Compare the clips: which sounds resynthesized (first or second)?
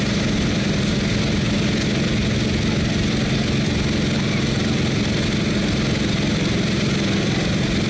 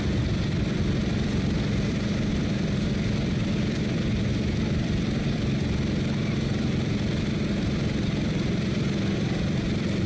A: second